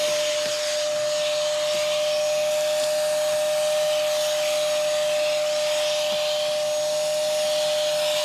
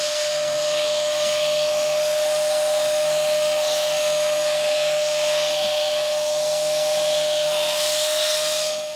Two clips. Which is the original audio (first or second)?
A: first